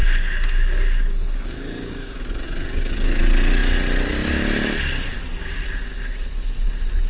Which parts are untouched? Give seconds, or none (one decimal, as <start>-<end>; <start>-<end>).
3.2-7.1

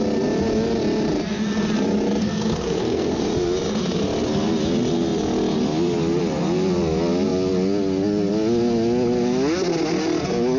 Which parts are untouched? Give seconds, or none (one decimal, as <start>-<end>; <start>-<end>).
0.0-2.2; 3.2-10.6

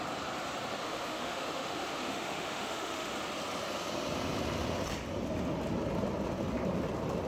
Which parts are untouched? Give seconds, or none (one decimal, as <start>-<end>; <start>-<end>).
0.0-0.8; 3.1-7.3

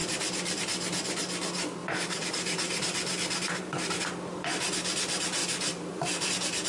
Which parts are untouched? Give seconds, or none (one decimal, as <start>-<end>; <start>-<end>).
0.6-1.8; 4.0-5.4; 6.3-6.7

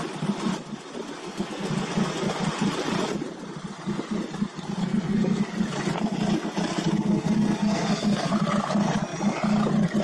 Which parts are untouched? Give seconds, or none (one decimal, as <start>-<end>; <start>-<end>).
0.0-1.2; 1.7-4.8; 5.4-7.1; 8.3-10.0

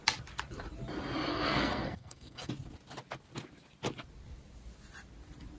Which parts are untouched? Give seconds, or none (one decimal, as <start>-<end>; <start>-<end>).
0.0-1.3; 2.5-5.6

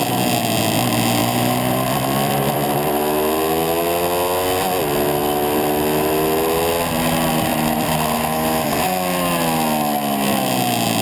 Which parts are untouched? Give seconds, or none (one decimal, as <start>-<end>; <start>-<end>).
0.0-1.2; 3.0-5.2; 6.7-7.5; 8.7-11.0